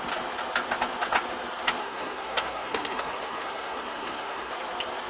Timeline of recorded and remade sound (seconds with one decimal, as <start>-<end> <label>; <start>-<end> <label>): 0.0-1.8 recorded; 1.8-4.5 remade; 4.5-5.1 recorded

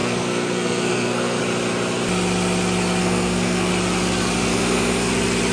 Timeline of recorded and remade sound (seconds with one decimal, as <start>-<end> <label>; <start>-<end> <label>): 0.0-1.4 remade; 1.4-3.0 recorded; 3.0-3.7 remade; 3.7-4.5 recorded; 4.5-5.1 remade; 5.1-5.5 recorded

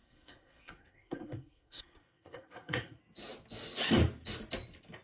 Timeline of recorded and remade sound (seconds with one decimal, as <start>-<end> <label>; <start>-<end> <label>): 0.0-3.0 remade; 3.0-5.0 recorded